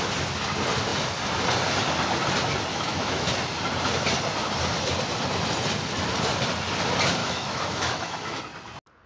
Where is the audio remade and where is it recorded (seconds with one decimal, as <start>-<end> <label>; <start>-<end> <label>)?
0.0-2.7 recorded; 2.7-3.3 remade; 3.3-7.2 recorded; 7.2-8.4 remade; 8.4-9.1 recorded